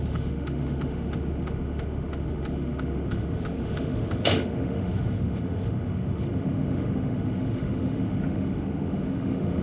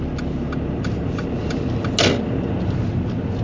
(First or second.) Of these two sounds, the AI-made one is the first